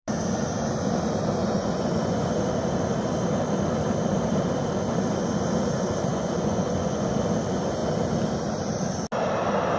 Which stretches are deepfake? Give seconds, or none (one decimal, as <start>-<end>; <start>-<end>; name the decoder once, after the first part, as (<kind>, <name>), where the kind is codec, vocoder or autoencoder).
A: 1.4-2.3 (vocoder, Vocos); 6.1-7.1